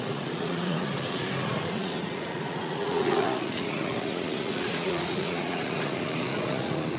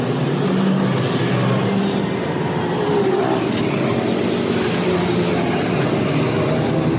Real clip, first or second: second